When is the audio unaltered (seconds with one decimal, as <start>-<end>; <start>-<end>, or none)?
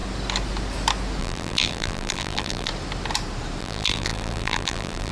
0.0-1.2; 2.7-3.6